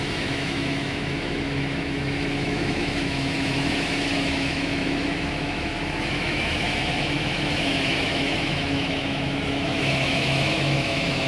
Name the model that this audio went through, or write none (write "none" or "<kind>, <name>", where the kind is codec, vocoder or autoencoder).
autoencoder, DAC-VAE